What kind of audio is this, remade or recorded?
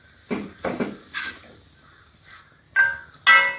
recorded